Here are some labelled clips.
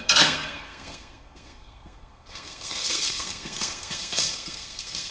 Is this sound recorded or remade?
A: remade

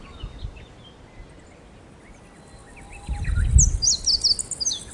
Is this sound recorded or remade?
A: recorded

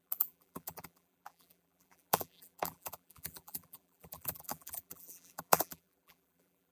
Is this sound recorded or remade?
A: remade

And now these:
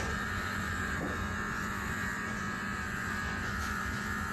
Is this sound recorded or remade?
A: remade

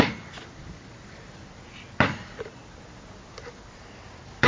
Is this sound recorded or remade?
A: recorded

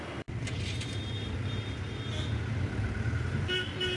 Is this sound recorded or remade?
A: recorded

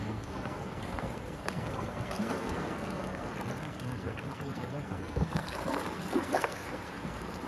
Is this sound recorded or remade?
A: remade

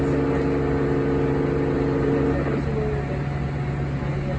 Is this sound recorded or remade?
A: recorded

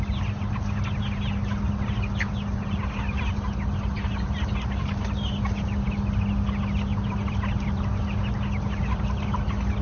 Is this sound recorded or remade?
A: recorded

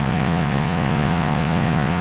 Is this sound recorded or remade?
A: remade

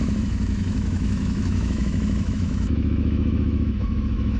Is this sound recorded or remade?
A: remade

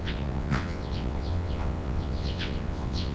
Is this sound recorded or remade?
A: remade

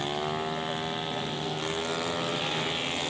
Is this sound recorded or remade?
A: recorded